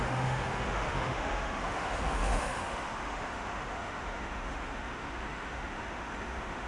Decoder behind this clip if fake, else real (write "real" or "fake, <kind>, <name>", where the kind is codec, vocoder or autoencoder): fake, autoencoder, DAC-VAE